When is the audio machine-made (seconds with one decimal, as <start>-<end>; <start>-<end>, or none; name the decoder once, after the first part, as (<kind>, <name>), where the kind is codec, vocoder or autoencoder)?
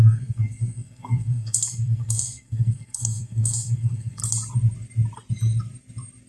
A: 0.0-4.2 (codec, SNAC)